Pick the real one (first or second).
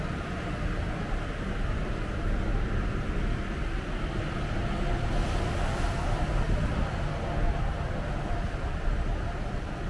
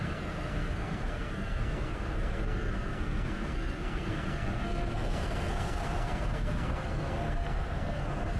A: first